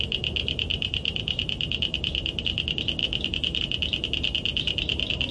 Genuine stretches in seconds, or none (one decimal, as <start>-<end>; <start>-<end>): 0.0-0.7; 1.4-3.0; 3.6-4.5